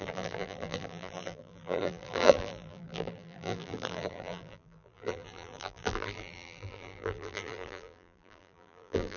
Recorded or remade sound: remade